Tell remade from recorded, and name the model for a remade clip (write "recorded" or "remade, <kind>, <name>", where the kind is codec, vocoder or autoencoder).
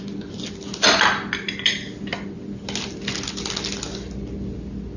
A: recorded